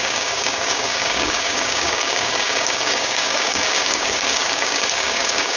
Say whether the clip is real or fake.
fake